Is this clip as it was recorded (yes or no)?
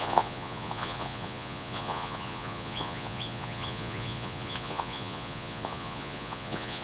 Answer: no